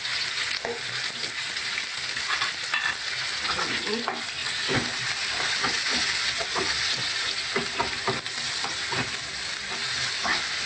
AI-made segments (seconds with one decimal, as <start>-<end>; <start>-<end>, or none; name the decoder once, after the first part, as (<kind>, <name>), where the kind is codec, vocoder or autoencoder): none